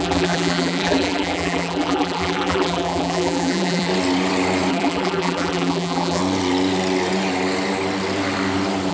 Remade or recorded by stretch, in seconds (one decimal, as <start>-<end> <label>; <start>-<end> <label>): 0.0-3.9 remade; 3.9-4.7 recorded; 4.7-6.2 remade; 6.2-8.9 recorded